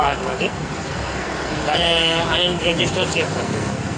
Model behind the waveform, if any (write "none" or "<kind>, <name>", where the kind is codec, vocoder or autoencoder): codec, SNAC